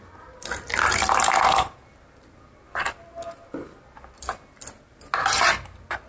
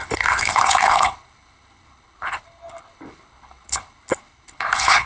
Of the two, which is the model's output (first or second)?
second